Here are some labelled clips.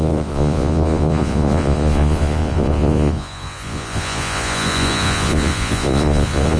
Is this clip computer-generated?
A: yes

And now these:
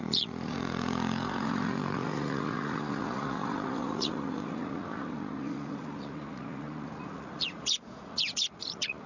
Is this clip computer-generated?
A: yes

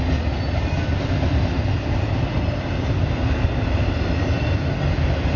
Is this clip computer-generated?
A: no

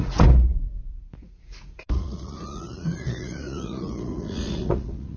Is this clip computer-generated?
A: yes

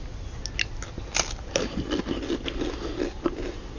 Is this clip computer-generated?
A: no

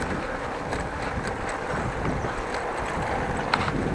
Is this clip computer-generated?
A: no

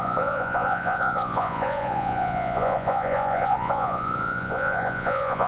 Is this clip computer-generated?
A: yes